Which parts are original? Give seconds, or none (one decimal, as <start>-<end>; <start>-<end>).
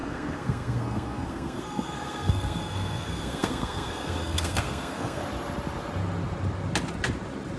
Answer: 5.2-7.6